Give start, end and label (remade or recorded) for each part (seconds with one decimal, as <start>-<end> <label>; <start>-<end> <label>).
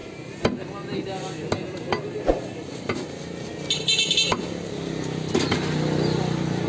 0.0-6.7 recorded